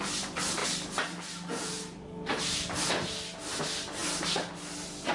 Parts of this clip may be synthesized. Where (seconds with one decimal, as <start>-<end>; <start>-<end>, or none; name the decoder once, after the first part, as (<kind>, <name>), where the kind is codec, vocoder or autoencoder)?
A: none